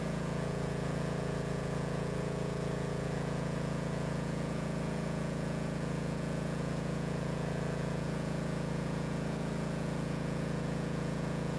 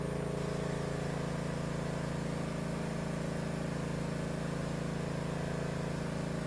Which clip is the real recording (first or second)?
second